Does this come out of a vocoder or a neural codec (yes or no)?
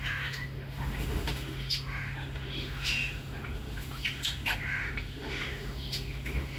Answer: yes